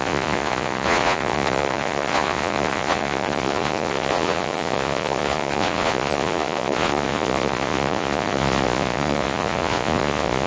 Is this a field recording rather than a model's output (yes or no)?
no